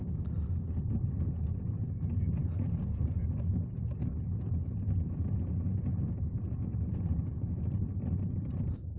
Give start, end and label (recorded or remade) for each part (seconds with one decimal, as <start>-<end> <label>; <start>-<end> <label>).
0.0-9.0 recorded